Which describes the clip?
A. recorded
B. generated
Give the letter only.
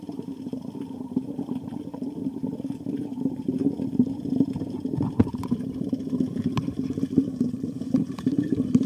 B